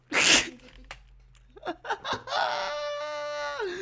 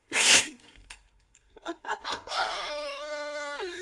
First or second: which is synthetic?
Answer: second